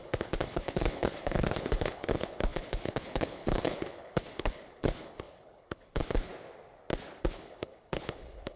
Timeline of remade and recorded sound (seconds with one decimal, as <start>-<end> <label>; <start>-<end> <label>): 0.0-6.3 remade; 6.3-7.2 recorded; 7.2-8.6 remade